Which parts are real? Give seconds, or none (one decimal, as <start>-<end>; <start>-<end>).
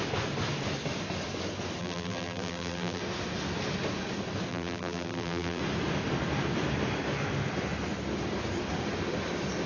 0.0-1.8; 3.0-4.5; 5.6-9.7